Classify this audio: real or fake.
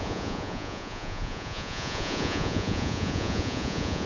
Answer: fake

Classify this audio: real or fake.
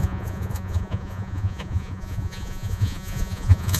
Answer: fake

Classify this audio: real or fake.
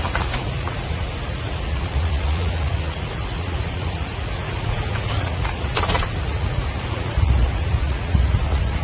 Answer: fake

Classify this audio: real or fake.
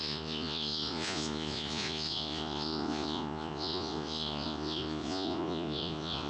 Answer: fake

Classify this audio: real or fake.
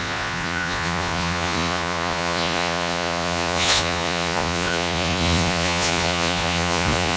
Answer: fake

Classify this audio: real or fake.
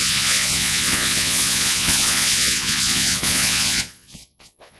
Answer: fake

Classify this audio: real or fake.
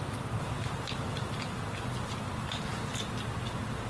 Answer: real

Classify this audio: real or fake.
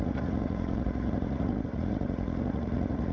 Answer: fake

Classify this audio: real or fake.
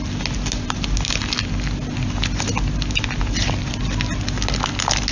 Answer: real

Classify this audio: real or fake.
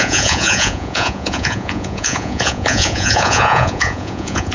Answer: fake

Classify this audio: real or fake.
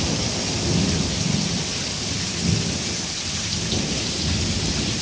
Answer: real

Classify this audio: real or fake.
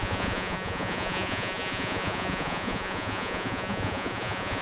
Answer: fake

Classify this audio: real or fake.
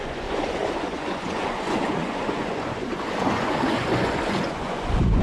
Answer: fake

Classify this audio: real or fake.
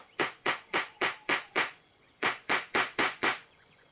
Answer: fake